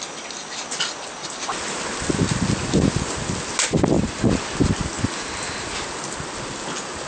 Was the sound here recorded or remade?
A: recorded